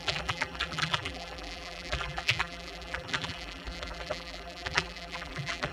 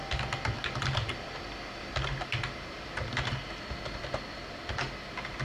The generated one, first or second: first